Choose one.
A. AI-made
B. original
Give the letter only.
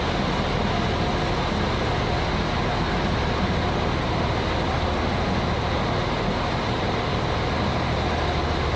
B